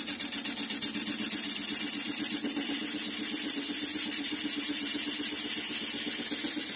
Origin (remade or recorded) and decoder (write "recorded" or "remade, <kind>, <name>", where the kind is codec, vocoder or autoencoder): recorded